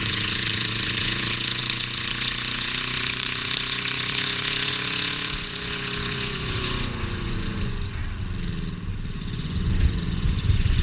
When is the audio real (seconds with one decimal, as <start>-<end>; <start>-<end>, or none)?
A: 8.0-9.1